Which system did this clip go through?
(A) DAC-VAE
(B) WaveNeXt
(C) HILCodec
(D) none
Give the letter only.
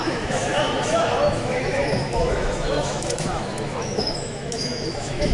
A